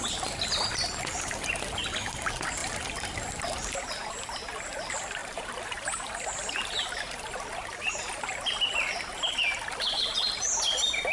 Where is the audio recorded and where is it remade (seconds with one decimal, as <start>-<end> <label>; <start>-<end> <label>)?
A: 0.0-5.2 recorded; 5.2-6.1 remade; 6.1-11.1 recorded